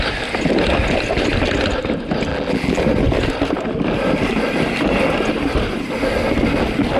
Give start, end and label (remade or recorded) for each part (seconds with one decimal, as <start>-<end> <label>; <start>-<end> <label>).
0.0-2.3 recorded; 2.3-2.8 remade; 2.8-7.0 recorded